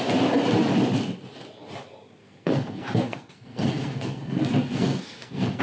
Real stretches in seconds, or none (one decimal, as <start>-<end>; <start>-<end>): 0.0-2.2